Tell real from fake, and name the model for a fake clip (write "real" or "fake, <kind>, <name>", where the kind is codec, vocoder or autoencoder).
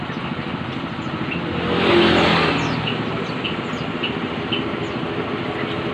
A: real